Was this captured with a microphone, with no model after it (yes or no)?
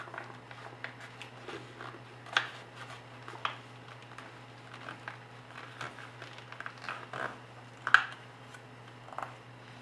yes